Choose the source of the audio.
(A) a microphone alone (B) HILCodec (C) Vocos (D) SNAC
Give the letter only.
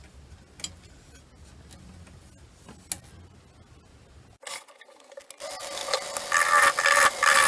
A